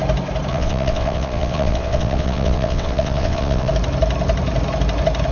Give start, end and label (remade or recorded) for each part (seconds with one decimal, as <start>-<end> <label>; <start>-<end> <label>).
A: 0.0-0.5 recorded; 0.5-3.7 remade; 3.7-5.3 recorded